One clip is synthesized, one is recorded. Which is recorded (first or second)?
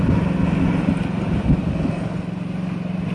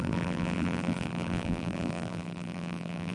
first